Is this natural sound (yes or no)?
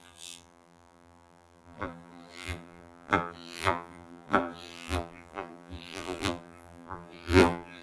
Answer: no